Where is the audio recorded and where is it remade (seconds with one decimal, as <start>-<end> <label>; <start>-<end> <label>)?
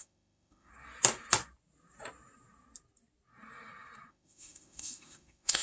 0.0-0.7 remade; 0.7-4.1 recorded; 4.1-5.6 remade